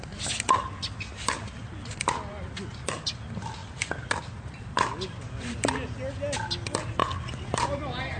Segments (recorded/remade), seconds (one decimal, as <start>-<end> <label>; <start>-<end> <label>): 0.0-8.2 recorded